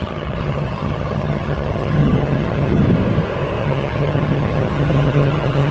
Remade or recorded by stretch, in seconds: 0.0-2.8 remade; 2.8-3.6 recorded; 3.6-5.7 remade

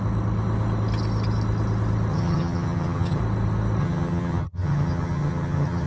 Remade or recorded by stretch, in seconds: 0.0-2.1 recorded; 2.1-3.2 remade; 3.2-3.8 recorded; 3.8-5.9 remade

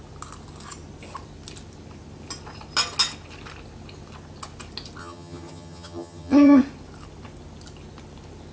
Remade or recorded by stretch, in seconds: 0.0-5.0 recorded; 5.0-6.6 remade; 6.6-8.5 recorded